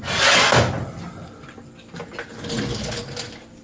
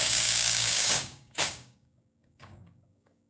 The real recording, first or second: first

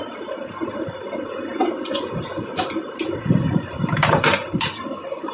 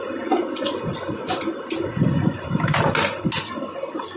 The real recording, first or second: second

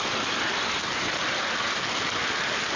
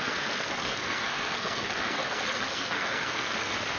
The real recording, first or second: first